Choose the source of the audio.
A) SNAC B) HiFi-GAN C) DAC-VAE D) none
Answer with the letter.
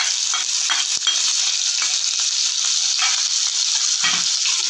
D